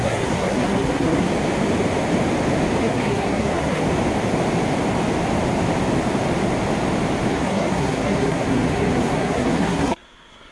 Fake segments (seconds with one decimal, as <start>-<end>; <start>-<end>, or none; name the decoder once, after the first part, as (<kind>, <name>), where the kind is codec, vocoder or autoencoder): 0.0-1.3 (codec, SNAC); 2.8-3.8; 7.3-10.5